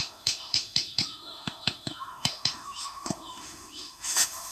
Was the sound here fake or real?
fake